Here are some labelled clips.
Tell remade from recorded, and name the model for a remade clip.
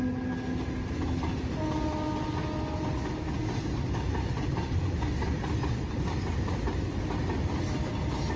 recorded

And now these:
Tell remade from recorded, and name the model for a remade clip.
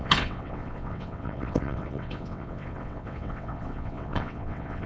remade, vocoder, WaveNeXt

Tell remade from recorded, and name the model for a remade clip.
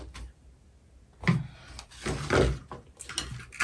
recorded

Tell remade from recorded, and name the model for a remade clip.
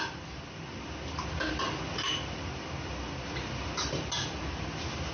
recorded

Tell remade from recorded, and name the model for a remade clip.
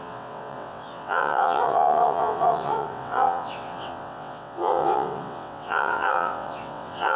remade, vocoder, WaveNeXt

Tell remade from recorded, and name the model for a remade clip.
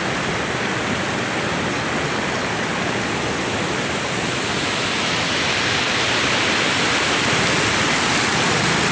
recorded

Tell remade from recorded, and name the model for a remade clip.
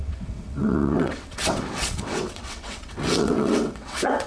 remade, vocoder, WaveNeXt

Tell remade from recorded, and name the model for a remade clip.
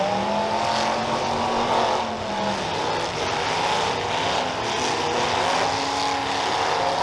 recorded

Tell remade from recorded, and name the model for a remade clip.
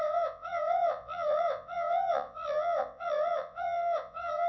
remade, vocoder, WaveNeXt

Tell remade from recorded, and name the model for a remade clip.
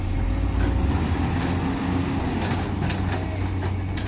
recorded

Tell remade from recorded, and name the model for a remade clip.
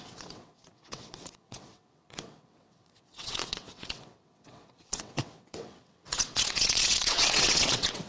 remade, vocoder, WaveNeXt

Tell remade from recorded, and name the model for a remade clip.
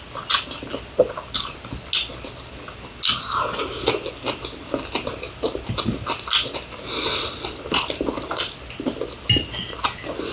recorded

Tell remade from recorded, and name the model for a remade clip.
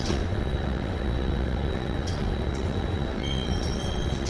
remade, vocoder, WaveNeXt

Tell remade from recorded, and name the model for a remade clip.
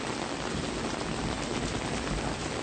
recorded